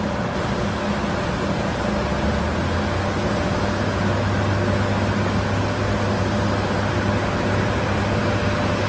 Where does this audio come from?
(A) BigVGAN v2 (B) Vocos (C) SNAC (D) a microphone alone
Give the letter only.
D